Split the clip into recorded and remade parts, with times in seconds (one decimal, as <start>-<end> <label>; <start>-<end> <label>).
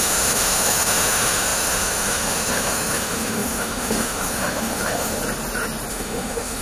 0.0-5.2 remade; 5.2-5.9 recorded; 5.9-6.6 remade